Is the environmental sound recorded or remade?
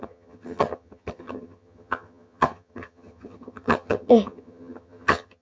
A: remade